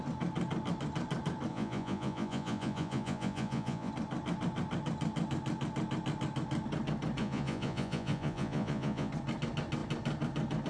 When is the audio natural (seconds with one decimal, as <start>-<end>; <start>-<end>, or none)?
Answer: 0.0-1.5; 3.9-7.2; 9.1-10.7